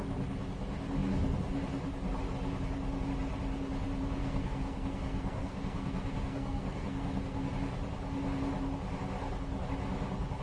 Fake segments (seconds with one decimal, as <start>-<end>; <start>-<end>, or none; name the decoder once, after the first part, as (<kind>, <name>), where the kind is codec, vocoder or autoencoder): 4.2-7.5 (codec, SNAC)